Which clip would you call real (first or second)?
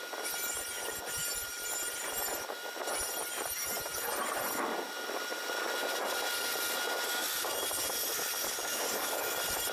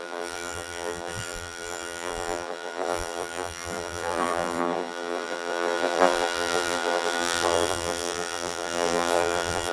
first